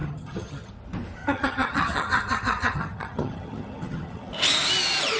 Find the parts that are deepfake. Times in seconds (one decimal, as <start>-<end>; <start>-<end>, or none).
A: 0.0-0.7; 1.2-4.3